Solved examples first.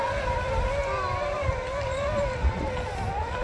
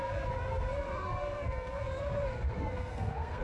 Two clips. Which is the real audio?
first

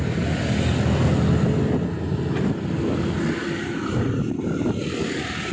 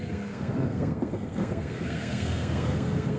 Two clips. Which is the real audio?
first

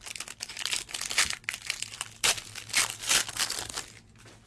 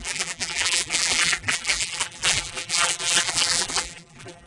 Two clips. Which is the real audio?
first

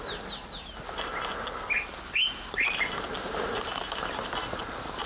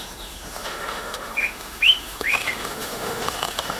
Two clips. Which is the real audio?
first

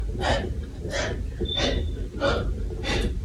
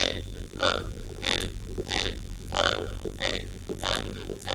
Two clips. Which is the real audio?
first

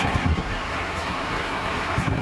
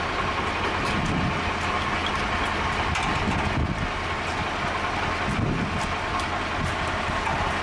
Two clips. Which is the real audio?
second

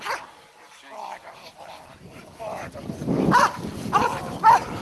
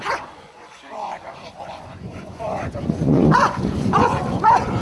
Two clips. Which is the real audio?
first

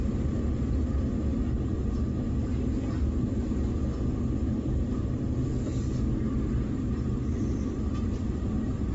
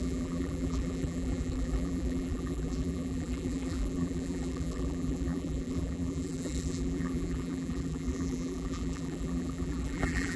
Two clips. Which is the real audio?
first